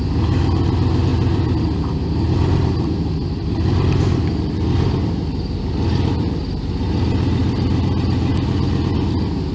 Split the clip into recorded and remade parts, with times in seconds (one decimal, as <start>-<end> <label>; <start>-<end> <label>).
0.0-1.1 recorded; 1.1-5.6 remade; 5.6-7.4 recorded; 7.4-7.9 remade; 7.9-8.3 recorded; 8.3-8.8 remade; 8.8-9.5 recorded